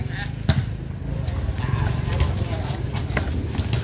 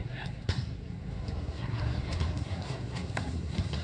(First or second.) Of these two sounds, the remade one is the second